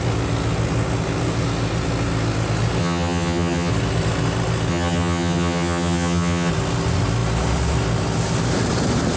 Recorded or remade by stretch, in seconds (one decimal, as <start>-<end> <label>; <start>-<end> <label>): 0.0-2.8 recorded; 2.8-3.7 remade; 3.7-4.7 recorded; 4.7-6.5 remade; 6.5-9.2 recorded